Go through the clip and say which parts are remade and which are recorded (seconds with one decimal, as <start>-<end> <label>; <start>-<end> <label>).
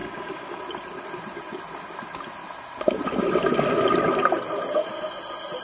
0.0-0.6 remade; 0.6-5.6 recorded